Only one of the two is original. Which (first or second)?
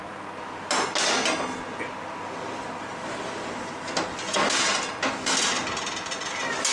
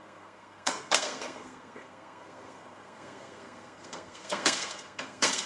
first